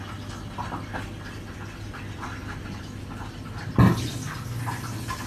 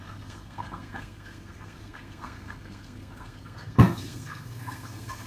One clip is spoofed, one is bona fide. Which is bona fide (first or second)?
first